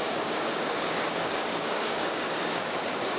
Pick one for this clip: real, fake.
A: fake